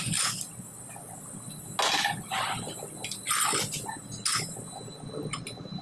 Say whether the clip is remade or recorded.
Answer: recorded